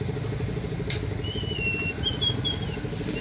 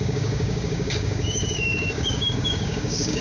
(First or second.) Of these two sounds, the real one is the first